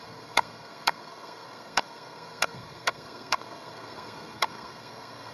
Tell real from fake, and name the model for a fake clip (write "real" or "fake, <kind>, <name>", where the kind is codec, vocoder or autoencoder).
fake, codec, SNAC